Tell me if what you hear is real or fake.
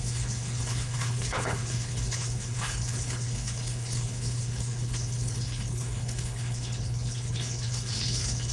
fake